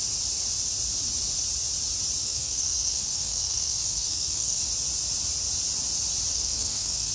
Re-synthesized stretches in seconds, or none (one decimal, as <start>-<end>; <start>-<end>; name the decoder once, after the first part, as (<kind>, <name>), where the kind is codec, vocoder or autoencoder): 2.2-4.6 (codec, SNAC); 6.3-7.1